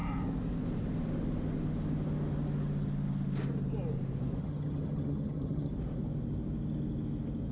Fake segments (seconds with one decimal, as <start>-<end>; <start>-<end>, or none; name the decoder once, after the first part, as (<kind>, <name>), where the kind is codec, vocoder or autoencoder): 4.4-5.7 (vocoder, HiFi-GAN)